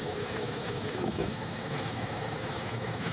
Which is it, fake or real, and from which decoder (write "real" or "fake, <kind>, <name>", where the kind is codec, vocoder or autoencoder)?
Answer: fake, autoencoder, DAC-VAE